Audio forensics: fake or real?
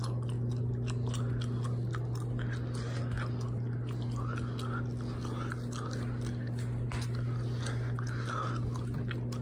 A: real